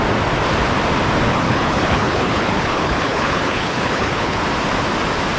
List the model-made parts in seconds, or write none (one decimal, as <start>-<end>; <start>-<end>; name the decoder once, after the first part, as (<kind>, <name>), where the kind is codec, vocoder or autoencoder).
1.3-4.5 (codec, HILCodec)